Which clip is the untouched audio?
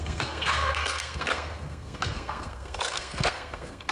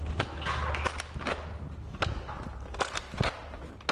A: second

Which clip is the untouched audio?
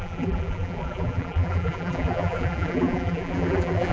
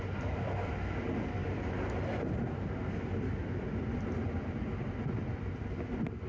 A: second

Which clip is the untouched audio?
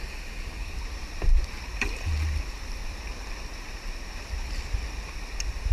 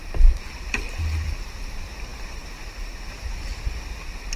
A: first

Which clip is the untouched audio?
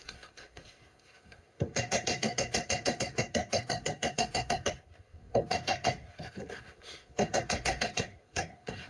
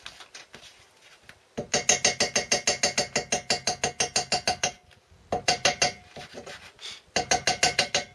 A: second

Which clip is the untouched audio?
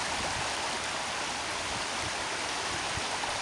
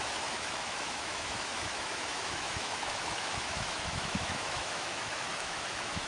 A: first